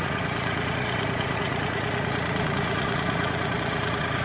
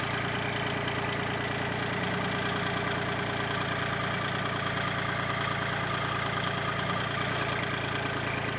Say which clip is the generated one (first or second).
first